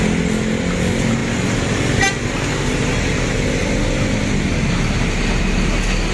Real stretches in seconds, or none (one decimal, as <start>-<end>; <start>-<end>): 0.0-6.1